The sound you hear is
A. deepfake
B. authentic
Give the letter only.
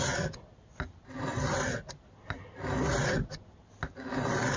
B